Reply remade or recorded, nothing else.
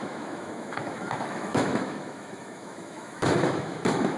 remade